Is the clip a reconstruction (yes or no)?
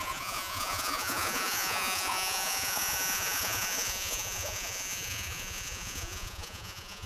yes